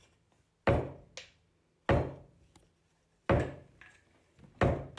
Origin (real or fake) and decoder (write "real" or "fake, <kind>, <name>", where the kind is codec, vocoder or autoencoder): real